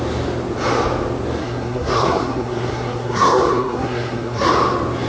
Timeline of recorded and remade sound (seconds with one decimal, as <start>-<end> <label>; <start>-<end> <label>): 0.0-1.4 recorded; 1.4-4.5 remade; 4.5-5.1 recorded